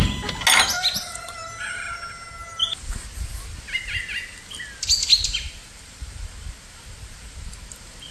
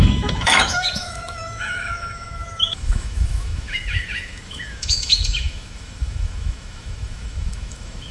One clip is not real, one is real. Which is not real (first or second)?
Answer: second